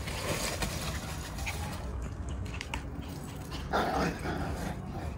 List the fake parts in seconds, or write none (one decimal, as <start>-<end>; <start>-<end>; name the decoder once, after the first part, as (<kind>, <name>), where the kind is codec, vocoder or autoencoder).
1.9-2.7 (codec, DAC)

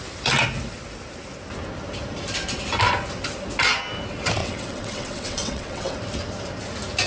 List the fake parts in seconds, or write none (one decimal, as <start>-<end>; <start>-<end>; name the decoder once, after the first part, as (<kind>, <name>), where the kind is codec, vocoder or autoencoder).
4.4-5.9 (vocoder, WaveNeXt)

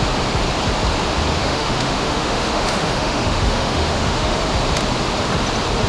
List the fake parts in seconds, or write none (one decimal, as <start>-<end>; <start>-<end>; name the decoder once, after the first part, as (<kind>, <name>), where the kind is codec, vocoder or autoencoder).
1.4-4.4 (autoencoder, DAC-VAE)

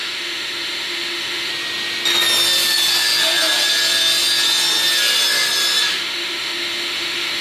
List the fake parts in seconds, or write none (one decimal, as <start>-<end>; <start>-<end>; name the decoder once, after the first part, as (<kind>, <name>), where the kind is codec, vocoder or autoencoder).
0.0-1.5 (autoencoder, DAC-VAE); 5.9-7.4

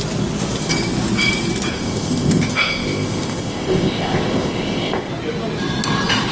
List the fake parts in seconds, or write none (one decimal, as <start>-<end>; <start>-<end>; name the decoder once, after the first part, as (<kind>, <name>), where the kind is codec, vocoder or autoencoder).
1.7-5.1 (codec, ZipCodec)

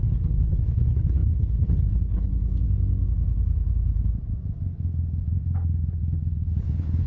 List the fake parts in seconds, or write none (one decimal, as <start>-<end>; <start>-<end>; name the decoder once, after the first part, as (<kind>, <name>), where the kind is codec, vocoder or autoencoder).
0.0-2.3 (codec, HILCodec); 6.6-7.1

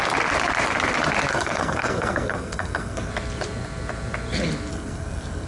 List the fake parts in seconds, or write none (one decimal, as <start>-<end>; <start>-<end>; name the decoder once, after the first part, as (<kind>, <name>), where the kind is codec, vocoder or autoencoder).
1.3-3.1 (codec, SNAC); 4.7-5.5

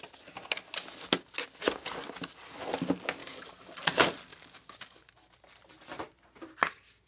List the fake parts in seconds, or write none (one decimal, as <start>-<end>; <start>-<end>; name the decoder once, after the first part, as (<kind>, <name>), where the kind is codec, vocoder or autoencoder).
3.2-3.7 (codec, DAC); 4.3-5.1